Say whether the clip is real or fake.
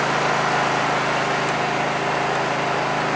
real